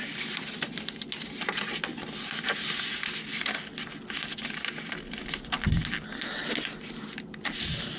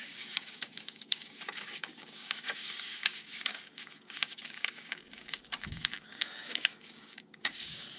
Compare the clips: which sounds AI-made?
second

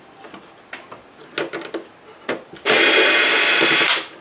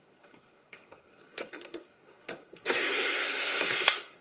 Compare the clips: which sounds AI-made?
second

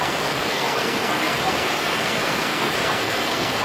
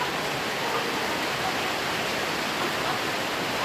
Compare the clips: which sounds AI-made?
first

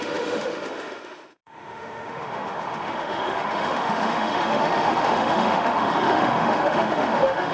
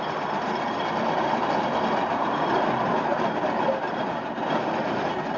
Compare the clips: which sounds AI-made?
first